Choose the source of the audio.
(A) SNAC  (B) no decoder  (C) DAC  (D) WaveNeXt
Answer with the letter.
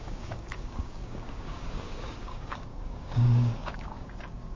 C